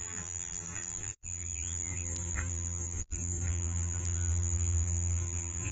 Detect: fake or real fake